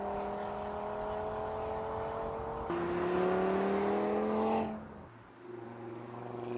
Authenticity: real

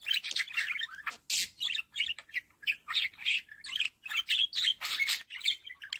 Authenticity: real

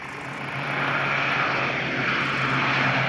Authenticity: real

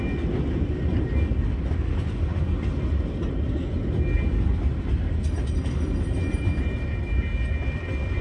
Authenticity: real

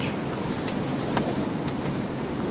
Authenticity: real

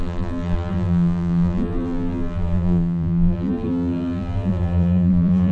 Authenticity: fake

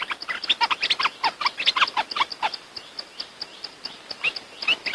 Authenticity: real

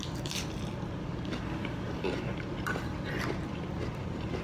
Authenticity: fake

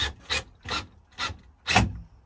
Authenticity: real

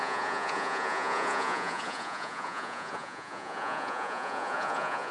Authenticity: fake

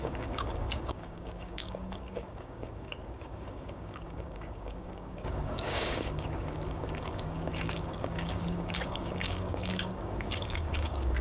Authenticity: fake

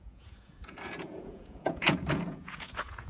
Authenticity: fake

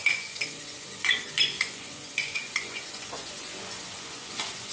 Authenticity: fake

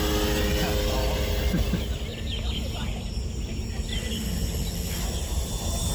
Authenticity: real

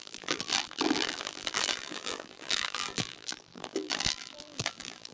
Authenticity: fake